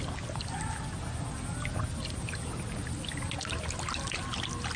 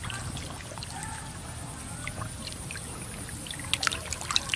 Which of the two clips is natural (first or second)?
first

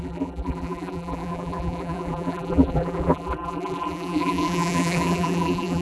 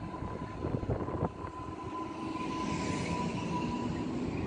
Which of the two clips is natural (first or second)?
second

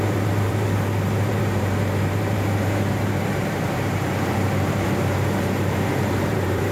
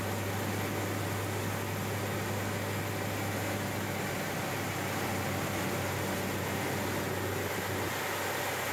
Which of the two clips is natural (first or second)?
second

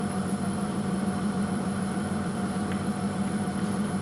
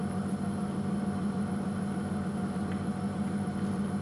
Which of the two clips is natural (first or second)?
second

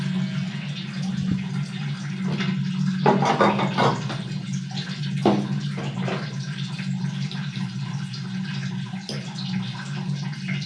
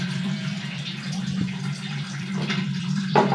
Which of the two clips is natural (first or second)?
first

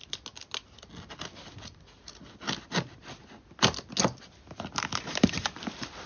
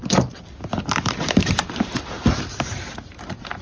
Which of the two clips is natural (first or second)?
first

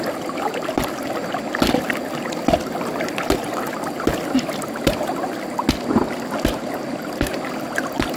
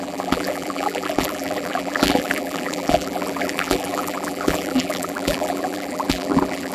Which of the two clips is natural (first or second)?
first